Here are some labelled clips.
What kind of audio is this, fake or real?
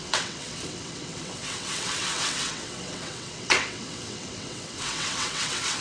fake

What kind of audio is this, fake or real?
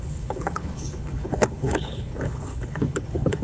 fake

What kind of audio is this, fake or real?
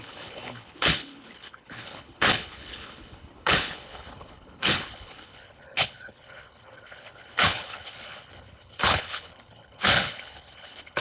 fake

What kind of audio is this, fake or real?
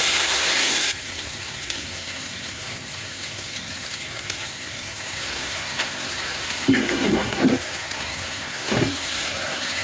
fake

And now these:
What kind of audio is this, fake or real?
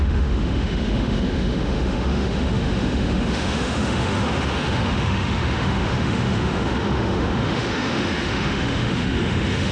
fake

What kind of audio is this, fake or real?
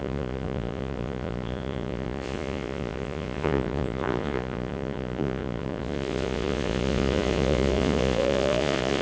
fake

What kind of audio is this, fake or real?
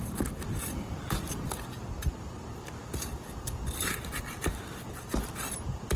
real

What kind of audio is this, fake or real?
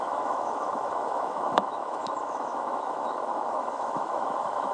fake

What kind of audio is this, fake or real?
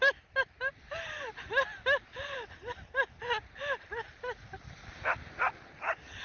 real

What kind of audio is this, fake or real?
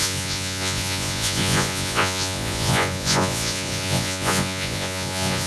fake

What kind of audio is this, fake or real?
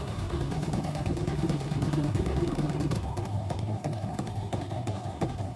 fake